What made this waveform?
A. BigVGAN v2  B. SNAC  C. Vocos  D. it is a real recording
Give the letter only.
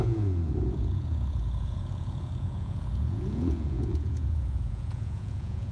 C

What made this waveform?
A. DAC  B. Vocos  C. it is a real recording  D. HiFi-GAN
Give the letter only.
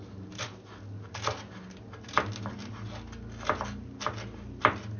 C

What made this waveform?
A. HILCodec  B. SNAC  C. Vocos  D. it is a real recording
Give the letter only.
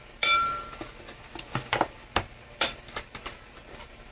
D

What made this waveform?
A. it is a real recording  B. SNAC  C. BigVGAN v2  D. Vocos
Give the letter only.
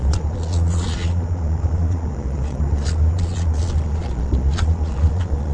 D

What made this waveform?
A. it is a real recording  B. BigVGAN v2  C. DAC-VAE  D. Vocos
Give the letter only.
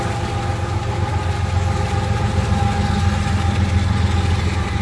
A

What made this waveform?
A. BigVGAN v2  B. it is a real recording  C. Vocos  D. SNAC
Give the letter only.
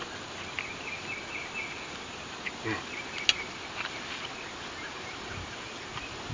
B